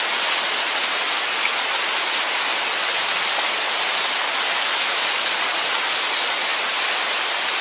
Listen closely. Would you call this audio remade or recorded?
recorded